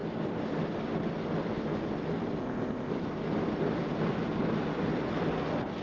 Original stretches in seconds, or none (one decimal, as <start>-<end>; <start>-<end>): 0.0-2.4; 2.9-5.8